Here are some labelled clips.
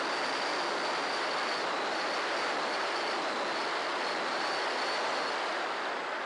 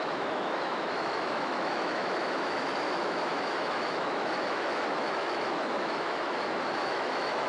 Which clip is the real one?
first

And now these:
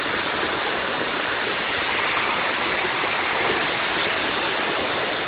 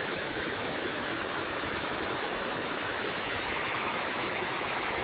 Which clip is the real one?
first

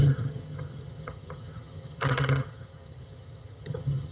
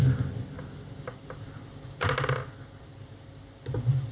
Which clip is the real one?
second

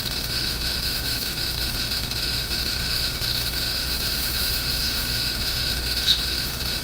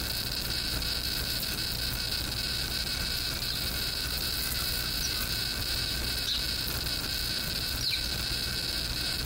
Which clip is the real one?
second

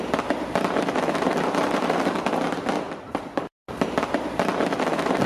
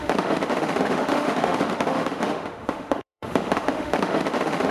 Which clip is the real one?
first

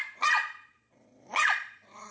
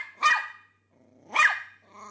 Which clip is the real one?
second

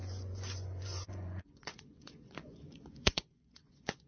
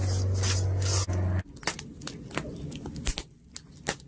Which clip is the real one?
second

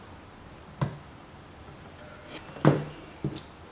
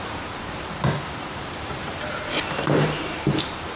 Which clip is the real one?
first